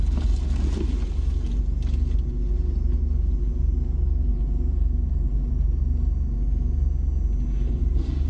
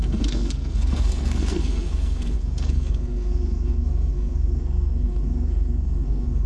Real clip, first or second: first